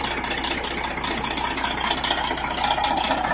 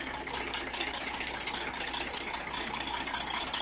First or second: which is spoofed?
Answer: second